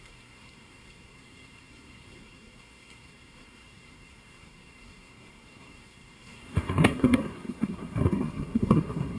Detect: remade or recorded remade